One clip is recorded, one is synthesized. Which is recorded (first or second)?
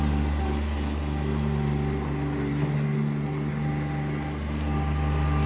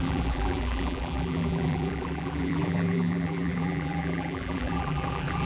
first